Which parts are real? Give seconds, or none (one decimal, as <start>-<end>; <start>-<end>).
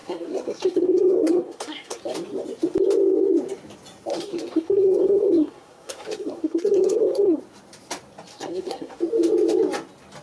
2.0-4.1; 7.4-8.3; 9.0-10.2